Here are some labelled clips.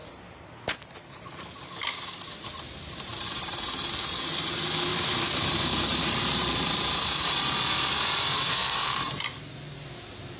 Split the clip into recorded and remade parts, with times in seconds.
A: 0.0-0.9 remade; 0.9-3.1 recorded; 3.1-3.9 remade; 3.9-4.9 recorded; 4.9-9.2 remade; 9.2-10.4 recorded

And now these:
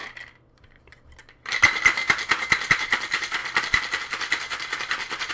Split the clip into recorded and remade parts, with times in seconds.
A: 0.0-0.5 recorded; 0.5-2.0 remade; 2.0-2.7 recorded; 2.7-3.4 remade; 3.4-5.3 recorded